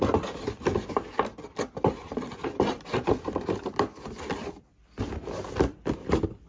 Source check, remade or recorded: recorded